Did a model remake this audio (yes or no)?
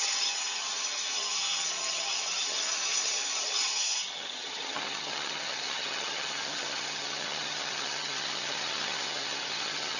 yes